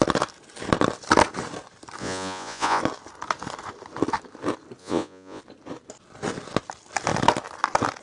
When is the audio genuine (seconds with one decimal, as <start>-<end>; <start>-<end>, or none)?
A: 0.0-2.0; 2.8-4.8; 5.4-8.0